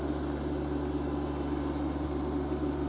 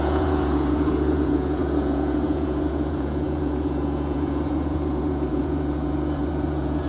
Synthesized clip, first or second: second